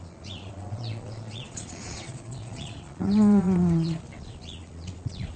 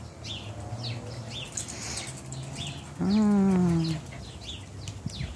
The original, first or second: second